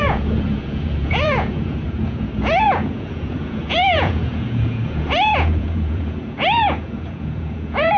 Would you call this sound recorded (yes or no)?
no